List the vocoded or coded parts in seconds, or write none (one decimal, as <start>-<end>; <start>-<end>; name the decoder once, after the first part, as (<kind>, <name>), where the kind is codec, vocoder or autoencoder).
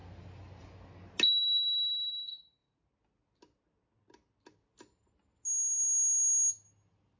none